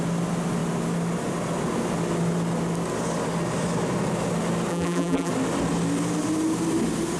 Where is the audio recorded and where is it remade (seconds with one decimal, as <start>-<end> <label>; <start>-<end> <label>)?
0.0-4.7 recorded; 4.7-5.3 remade; 5.3-7.2 recorded